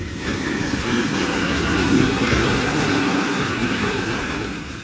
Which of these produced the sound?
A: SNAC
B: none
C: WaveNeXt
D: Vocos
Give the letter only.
A